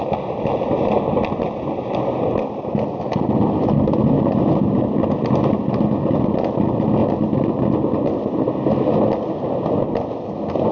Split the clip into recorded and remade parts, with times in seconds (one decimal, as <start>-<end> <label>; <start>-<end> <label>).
0.0-7.0 recorded; 7.0-7.6 remade; 7.6-10.7 recorded